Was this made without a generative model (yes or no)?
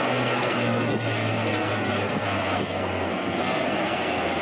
no